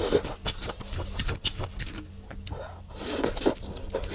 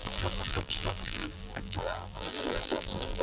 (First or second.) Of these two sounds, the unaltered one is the first